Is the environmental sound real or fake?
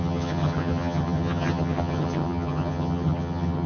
fake